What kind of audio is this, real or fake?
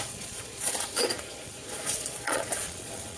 fake